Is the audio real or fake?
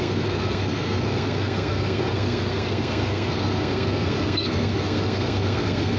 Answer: fake